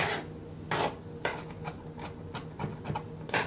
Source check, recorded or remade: recorded